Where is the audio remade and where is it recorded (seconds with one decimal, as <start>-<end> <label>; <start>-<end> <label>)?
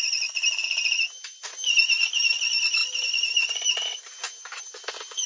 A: 0.0-5.3 recorded